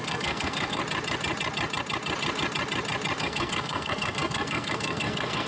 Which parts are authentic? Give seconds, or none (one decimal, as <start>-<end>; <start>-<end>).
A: 0.8-3.2